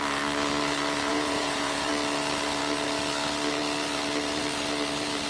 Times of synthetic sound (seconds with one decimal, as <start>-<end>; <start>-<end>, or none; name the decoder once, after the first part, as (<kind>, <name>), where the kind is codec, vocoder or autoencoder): 1.1-1.9 (vocoder, Vocos)